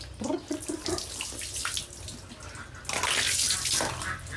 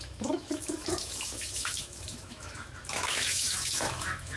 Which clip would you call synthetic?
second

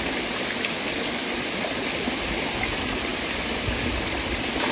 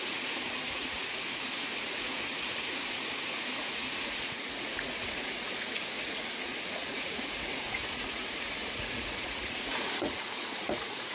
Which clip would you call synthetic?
second